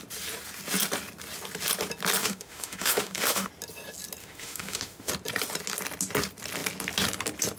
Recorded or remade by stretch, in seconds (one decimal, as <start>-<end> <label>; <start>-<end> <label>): 0.0-2.2 recorded; 2.2-3.5 remade; 3.5-4.2 recorded; 4.2-5.1 remade; 5.1-7.6 recorded

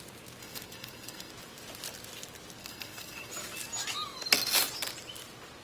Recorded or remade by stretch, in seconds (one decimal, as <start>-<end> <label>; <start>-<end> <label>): 0.0-0.4 recorded; 0.4-1.3 remade; 1.3-2.6 recorded; 2.6-3.3 remade; 3.3-5.6 recorded

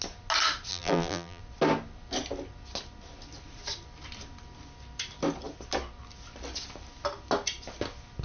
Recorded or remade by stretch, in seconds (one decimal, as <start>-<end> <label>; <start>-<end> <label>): 0.0-0.7 recorded; 0.7-1.4 remade; 1.4-8.2 recorded

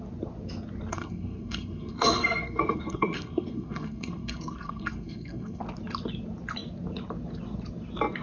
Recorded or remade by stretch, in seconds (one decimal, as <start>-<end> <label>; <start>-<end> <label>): 0.0-0.9 recorded; 0.9-5.6 remade; 5.6-8.2 recorded

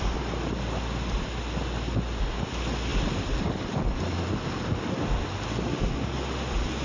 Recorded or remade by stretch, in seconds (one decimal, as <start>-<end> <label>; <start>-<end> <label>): 0.0-6.8 recorded

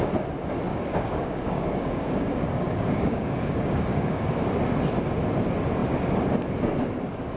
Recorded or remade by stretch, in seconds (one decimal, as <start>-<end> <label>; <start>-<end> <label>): 0.0-0.7 recorded; 0.7-4.3 remade; 4.3-7.4 recorded

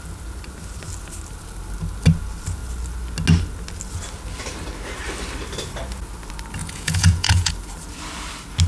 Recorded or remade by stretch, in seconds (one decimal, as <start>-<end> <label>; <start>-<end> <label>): 0.0-6.6 recorded; 6.6-7.5 remade; 7.5-8.7 recorded